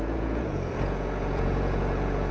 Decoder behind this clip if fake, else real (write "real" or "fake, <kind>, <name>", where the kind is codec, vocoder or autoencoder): fake, vocoder, Vocos